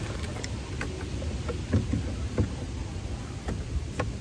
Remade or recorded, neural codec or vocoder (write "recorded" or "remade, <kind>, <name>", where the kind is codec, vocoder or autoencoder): recorded